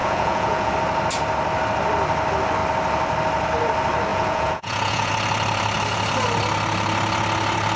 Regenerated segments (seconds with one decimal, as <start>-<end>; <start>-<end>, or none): 0.0-0.7; 4.1-5.1